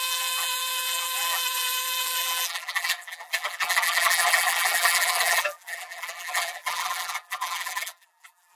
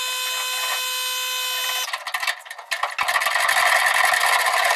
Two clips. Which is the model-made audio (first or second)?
first